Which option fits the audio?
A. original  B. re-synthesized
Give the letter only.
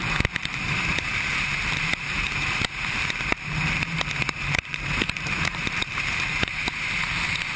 B